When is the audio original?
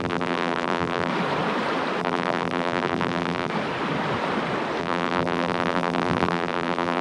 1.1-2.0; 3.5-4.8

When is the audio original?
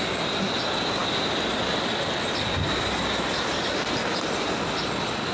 0.0-5.3